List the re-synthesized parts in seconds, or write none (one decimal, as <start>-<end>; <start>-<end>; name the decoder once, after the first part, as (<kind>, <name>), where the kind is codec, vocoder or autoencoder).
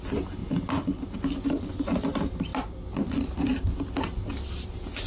0.4-1.4 (vocoder, BigVGAN v2); 2.5-4.0